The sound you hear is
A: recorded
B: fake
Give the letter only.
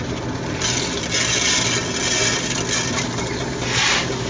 A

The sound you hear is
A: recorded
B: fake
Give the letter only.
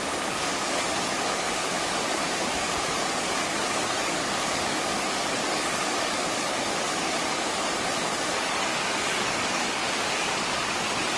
B